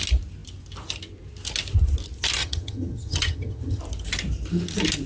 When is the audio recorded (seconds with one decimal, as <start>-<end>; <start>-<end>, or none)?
0.0-2.4; 3.8-5.1